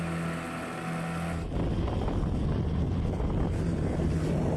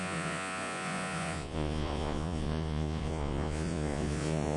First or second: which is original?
first